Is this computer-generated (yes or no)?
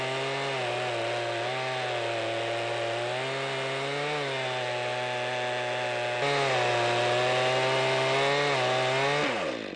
no